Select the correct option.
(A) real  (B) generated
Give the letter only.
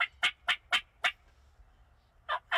A